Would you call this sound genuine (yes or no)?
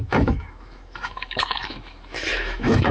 no